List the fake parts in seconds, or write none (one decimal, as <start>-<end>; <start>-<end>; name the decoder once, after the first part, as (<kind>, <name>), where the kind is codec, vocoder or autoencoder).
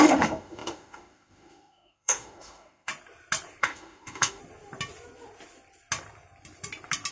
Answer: 0.0-2.9 (autoencoder, DAC-VAE); 3.6-4.4